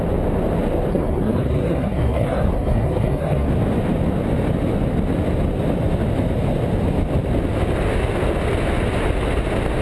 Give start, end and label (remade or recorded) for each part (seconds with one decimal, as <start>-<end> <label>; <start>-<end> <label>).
0.0-0.9 recorded; 0.9-3.5 remade; 3.5-9.8 recorded